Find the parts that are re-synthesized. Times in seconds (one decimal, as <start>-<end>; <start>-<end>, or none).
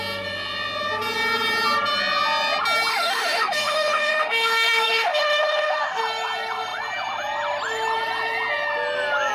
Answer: 2.9-6.0